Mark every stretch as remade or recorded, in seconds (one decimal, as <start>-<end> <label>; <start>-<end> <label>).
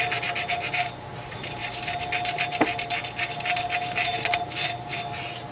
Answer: 0.0-5.5 recorded